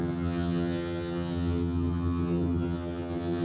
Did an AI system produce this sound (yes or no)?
yes